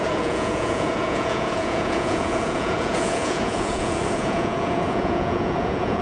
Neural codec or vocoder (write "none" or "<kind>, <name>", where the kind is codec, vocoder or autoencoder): vocoder, Vocos